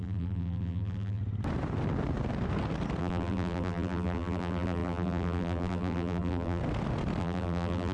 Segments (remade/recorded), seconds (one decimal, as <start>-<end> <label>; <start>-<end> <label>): 0.0-1.2 remade; 1.2-3.0 recorded; 3.0-6.6 remade; 6.6-7.2 recorded; 7.2-7.9 remade